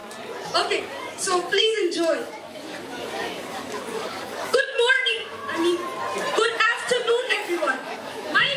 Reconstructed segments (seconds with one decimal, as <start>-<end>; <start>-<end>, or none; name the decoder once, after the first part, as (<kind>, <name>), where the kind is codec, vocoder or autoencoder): 0.8-5.4 (codec, DAC); 7.2-8.6